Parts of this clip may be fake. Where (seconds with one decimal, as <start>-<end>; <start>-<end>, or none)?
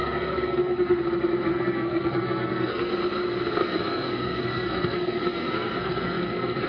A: 0.0-1.0; 1.5-2.9; 3.6-6.7